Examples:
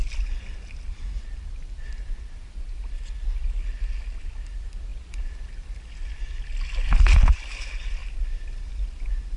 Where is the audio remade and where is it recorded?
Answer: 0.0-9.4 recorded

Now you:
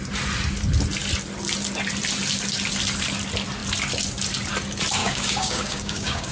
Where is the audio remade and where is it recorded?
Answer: 0.0-5.0 recorded; 5.0-6.3 remade

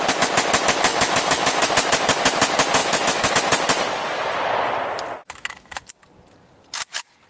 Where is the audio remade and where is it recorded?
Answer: 0.0-0.9 recorded; 0.9-1.7 remade; 1.7-2.8 recorded; 2.8-3.3 remade; 3.3-5.2 recorded; 5.2-5.9 remade; 5.9-7.3 recorded

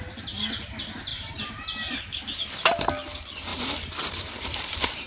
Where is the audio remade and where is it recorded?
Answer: 0.0-1.1 recorded; 1.1-2.0 remade; 2.0-3.5 recorded; 3.5-5.1 remade

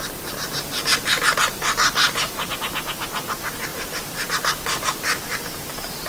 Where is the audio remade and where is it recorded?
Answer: 0.0-2.0 recorded; 2.0-2.5 remade; 2.5-3.7 recorded; 3.7-6.1 remade